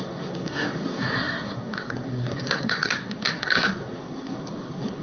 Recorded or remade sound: remade